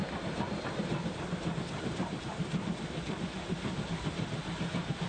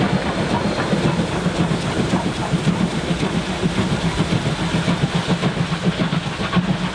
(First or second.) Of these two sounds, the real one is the second